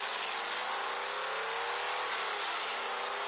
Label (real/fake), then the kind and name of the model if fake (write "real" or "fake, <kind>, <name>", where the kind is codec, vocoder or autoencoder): real